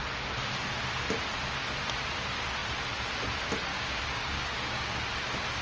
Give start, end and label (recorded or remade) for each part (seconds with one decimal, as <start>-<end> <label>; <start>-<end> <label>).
0.0-3.7 recorded; 3.7-5.0 remade; 5.0-5.6 recorded